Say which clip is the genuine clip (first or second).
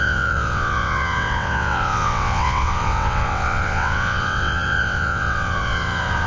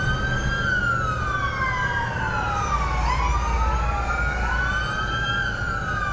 second